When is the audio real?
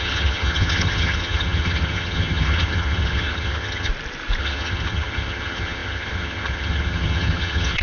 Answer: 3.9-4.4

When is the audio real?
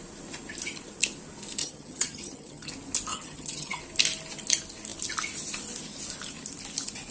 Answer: 0.0-1.6; 2.7-3.1; 3.8-7.1